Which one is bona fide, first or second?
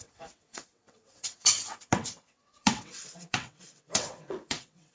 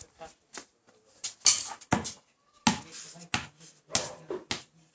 second